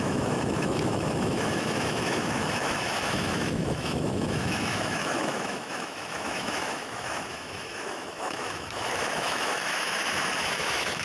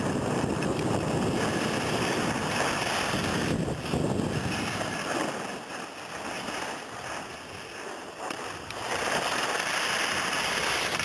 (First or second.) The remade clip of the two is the first